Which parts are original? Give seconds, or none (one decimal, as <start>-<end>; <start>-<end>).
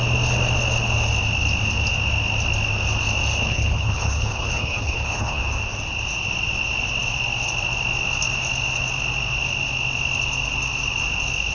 0.0-3.4; 5.4-11.5